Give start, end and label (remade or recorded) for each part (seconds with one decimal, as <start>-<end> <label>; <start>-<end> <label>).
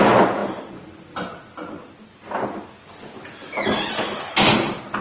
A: 0.0-5.0 recorded